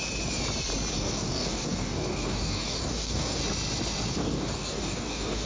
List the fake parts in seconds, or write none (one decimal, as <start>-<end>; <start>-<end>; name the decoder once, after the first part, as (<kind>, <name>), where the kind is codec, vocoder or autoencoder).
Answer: 0.9-3.4 (codec, DAC); 4.1-5.5